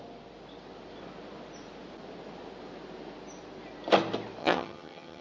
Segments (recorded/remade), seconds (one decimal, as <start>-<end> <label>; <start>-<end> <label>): 0.0-4.4 recorded; 4.4-5.2 remade